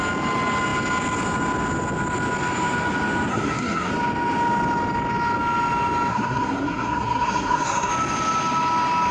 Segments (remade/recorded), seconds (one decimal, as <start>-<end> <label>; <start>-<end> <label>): 0.0-3.3 recorded; 3.3-3.9 remade; 3.9-6.1 recorded; 6.1-7.9 remade; 7.9-9.1 recorded